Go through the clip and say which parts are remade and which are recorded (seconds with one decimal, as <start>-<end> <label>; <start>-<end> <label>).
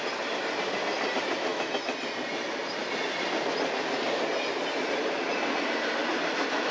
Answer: 0.0-6.7 recorded